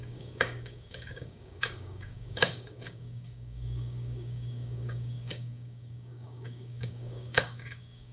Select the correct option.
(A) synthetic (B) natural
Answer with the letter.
A